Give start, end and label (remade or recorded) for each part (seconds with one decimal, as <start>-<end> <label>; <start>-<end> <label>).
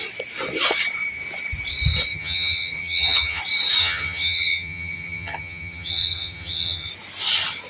0.0-2.1 recorded; 2.1-3.4 remade; 3.4-3.8 recorded; 3.8-6.9 remade; 6.9-7.7 recorded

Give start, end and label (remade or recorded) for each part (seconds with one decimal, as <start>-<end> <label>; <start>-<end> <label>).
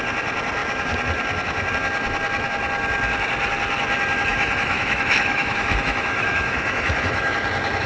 0.0-4.3 recorded; 4.3-7.4 remade; 7.4-7.9 recorded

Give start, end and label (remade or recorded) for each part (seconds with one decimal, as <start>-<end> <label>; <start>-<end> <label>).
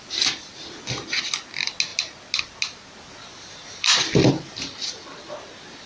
0.0-5.9 recorded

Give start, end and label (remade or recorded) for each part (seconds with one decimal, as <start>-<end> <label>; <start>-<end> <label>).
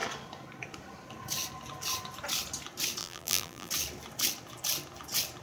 0.0-3.0 recorded; 3.0-3.7 remade; 3.7-5.4 recorded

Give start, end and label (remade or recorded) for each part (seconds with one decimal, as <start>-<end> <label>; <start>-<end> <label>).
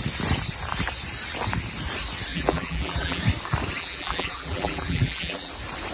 0.0-2.3 recorded; 2.3-3.2 remade; 3.2-3.8 recorded; 3.8-5.5 remade; 5.5-5.9 recorded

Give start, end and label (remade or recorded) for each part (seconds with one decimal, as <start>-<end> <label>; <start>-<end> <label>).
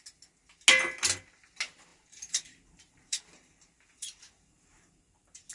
0.0-1.9 recorded; 1.9-5.5 remade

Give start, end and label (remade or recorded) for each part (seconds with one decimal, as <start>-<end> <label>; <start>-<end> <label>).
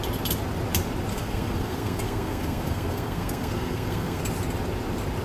0.0-1.1 recorded; 1.1-4.2 remade; 4.2-5.2 recorded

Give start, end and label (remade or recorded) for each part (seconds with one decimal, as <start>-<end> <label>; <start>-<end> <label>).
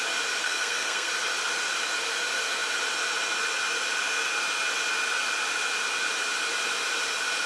0.0-0.4 recorded; 0.4-1.1 remade; 1.1-7.5 recorded